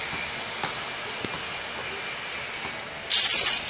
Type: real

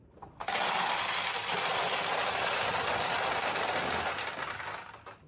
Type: real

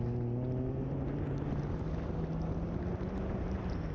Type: real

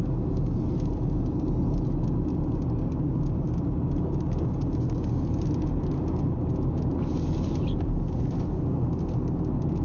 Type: real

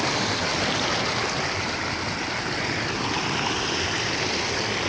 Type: real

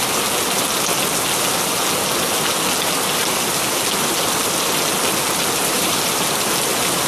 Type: real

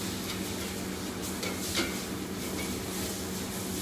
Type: real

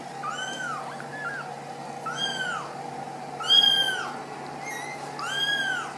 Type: real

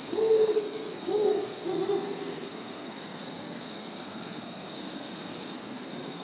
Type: fake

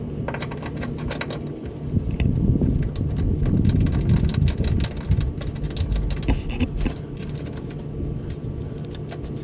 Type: real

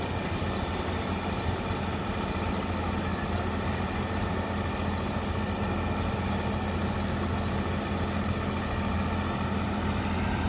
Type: real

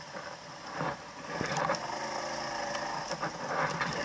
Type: real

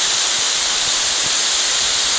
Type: real